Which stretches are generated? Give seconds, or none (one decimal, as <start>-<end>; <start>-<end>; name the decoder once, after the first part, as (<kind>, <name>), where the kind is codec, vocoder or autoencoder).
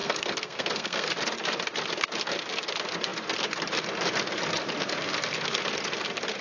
0.0-1.1 (codec, SNAC)